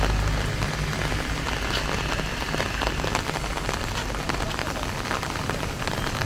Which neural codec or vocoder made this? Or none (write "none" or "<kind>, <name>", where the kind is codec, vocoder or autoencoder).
none